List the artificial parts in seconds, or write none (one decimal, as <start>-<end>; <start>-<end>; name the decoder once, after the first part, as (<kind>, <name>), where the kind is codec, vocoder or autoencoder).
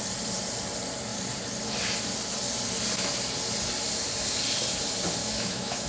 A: 5.2-5.9 (autoencoder, DAC-VAE)